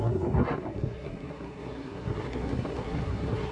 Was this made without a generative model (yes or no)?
no